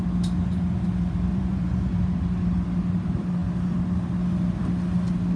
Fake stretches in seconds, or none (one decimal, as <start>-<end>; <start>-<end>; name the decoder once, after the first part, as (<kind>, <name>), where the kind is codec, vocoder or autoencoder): 1.3-1.9 (vocoder, Vocos)